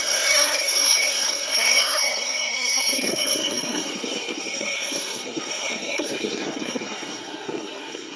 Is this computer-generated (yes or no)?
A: yes